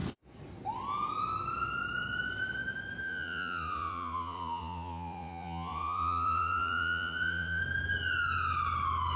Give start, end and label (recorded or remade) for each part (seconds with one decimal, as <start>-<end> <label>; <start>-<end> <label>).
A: 0.0-3.0 recorded; 3.0-7.6 remade; 7.6-9.2 recorded